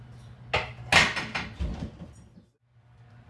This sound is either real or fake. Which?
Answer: real